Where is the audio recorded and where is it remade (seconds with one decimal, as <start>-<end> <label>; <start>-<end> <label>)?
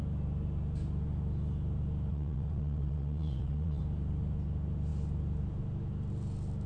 0.0-2.1 recorded; 2.1-3.8 remade; 3.8-6.7 recorded